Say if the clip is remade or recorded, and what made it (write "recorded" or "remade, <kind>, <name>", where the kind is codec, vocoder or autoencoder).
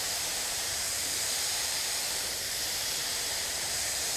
remade, vocoder, BigVGAN v2